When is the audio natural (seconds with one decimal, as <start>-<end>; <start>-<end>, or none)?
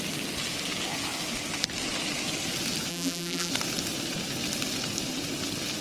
0.0-2.9; 3.5-5.8